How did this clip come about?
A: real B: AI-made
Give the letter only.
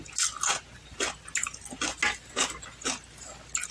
A